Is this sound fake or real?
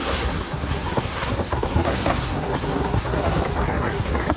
fake